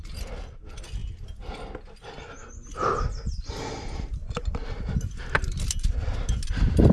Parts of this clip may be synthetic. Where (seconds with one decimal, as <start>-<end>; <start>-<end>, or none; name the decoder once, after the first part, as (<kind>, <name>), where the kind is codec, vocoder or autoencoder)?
none